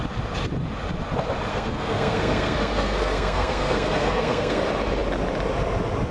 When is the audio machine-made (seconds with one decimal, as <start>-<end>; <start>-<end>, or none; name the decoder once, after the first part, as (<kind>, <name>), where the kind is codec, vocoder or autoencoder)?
1.5-4.6 (codec, SNAC)